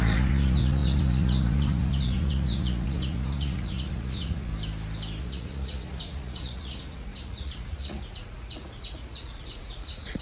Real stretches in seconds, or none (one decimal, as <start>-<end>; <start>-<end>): 4.5-5.2